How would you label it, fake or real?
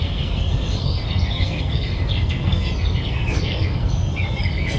fake